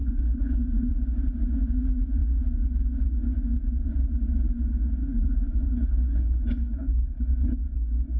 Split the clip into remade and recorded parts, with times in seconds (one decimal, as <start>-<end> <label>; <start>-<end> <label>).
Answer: 0.0-0.9 remade; 0.9-5.0 recorded; 5.0-7.3 remade; 7.3-8.2 recorded

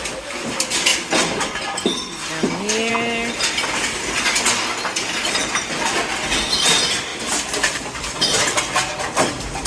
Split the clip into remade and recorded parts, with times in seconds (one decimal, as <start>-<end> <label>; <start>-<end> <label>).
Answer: 0.0-9.7 recorded